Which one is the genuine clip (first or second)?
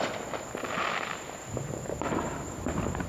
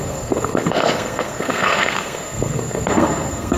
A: first